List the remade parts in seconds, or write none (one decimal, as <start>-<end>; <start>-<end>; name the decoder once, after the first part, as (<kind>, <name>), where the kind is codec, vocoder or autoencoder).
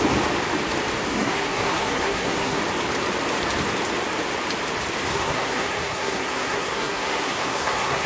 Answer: 1.1-2.6 (codec, SNAC); 5.1-8.1